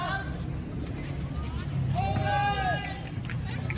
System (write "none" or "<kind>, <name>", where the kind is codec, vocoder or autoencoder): none